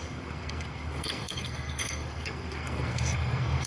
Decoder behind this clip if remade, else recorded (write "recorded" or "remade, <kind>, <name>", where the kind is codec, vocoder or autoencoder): remade, codec, SNAC